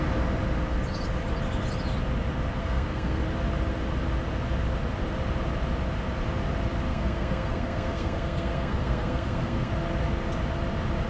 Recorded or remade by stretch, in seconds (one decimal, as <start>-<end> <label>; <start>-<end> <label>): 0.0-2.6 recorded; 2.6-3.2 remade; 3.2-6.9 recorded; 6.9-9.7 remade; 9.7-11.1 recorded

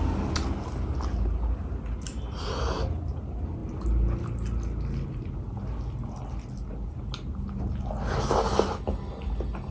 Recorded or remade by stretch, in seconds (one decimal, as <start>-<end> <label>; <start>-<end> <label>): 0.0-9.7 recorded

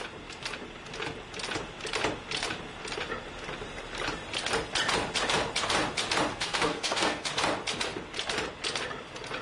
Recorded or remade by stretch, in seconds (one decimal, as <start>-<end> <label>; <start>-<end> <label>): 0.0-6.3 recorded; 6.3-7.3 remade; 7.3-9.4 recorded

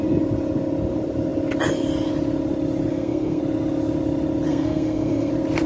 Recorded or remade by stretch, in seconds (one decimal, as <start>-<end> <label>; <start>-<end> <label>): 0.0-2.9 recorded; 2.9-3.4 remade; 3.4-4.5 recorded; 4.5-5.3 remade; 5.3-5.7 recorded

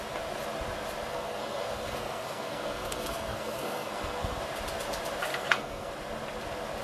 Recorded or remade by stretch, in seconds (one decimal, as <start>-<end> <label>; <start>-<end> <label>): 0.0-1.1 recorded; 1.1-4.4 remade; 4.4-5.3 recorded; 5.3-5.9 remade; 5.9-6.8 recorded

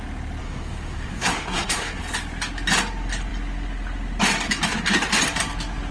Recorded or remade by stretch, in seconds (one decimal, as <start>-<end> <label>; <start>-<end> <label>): 0.0-0.4 recorded; 0.4-2.0 remade; 2.0-5.9 recorded

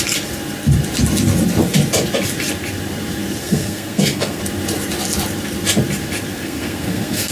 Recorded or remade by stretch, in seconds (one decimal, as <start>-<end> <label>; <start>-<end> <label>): 0.0-3.4 recorded; 3.4-4.4 remade; 4.4-6.3 recorded; 6.3-7.3 remade